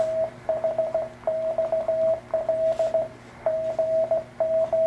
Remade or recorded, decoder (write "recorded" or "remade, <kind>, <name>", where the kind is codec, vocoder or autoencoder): recorded